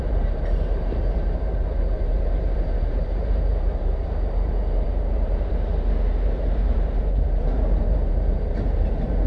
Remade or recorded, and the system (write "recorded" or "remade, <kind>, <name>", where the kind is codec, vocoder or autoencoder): remade, vocoder, BigVGAN v2